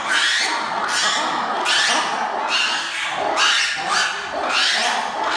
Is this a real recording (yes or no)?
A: yes